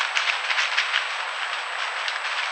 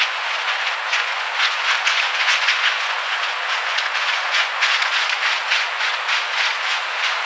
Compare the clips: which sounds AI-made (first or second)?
second